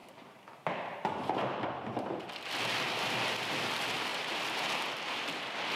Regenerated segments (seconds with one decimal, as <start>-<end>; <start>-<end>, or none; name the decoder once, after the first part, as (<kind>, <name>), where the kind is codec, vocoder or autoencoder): 4.1-4.8 (vocoder, BigVGAN v2)